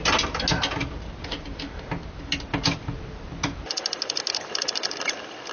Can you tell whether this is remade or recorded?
recorded